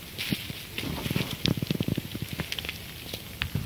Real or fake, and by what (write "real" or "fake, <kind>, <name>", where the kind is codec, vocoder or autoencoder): real